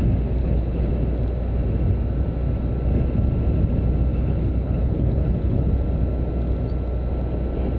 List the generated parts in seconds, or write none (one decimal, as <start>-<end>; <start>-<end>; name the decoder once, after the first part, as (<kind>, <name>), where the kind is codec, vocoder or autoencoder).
0.4-0.9 (codec, HILCodec); 4.1-5.7